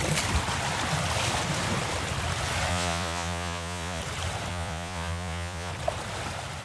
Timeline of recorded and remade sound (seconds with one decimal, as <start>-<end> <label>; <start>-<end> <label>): 0.0-2.7 recorded; 2.7-4.0 remade; 4.0-4.5 recorded; 4.5-5.7 remade; 5.7-6.6 recorded